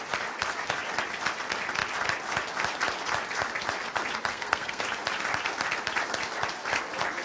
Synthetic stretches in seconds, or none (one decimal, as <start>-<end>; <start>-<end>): 4.3-4.8